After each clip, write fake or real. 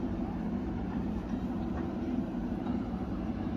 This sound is fake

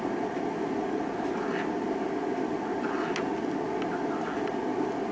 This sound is real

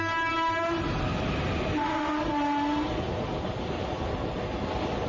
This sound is real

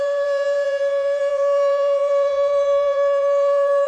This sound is fake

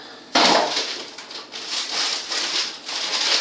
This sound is real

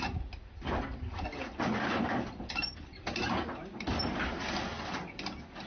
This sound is real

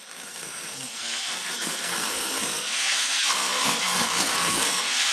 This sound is fake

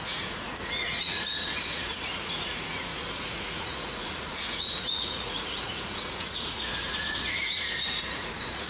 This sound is fake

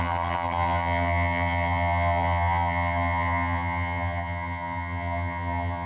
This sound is fake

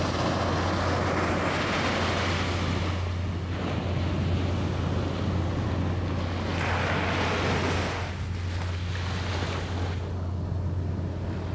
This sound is real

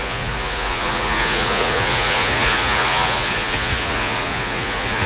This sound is fake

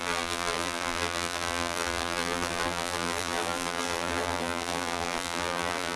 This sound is fake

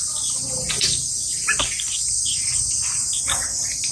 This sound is real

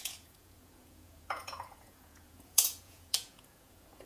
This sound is fake